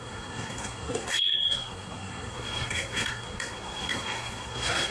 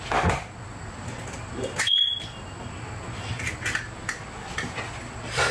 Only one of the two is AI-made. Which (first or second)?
first